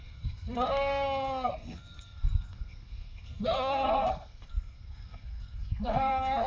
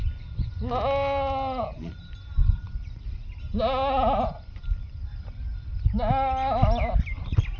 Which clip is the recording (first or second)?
second